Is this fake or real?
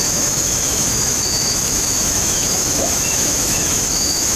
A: fake